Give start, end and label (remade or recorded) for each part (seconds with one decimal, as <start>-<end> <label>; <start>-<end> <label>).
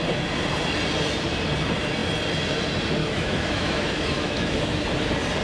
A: 0.0-3.0 recorded; 3.0-4.6 remade; 4.6-5.4 recorded